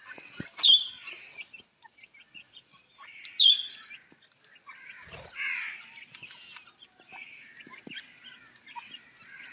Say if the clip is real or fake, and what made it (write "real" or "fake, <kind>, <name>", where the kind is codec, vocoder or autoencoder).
real